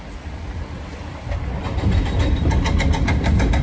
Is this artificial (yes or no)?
no